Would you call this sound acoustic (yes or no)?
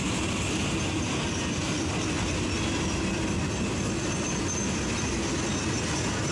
yes